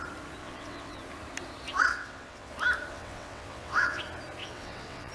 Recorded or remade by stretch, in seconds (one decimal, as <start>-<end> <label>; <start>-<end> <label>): 0.0-0.4 recorded; 0.4-1.0 remade; 1.0-1.9 recorded; 1.9-2.5 remade; 2.5-2.9 recorded; 2.9-4.0 remade; 4.0-4.4 recorded; 4.4-5.1 remade